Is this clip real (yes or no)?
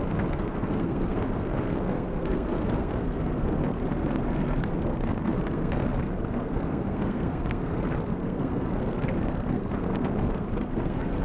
no